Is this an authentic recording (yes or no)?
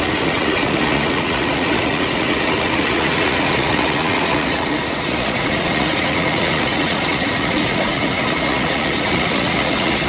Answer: no